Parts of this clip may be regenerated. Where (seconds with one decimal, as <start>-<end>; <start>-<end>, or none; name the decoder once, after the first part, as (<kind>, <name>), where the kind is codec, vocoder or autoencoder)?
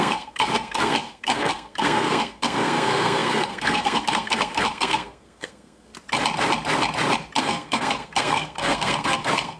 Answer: 0.0-5.9 (codec, SNAC); 7.4-9.6